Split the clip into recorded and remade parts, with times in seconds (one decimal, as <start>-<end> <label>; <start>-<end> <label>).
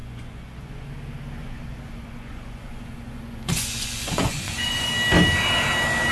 0.0-0.9 remade; 0.9-1.4 recorded; 1.4-4.9 remade; 4.9-6.1 recorded